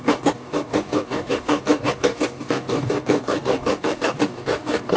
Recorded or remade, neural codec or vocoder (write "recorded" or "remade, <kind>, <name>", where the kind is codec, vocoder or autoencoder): remade, codec, DAC